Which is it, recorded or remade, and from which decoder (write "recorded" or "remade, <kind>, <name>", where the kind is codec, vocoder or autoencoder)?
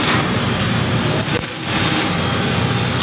recorded